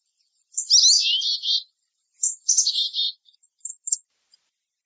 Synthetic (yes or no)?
no